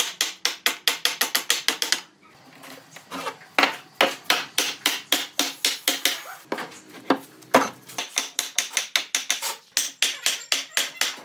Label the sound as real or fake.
real